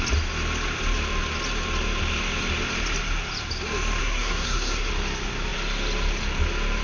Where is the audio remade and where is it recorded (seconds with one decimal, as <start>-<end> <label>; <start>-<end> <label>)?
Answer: 0.0-4.0 recorded; 4.0-4.9 remade; 4.9-6.8 recorded